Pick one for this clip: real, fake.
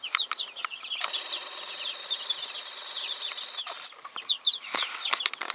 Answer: fake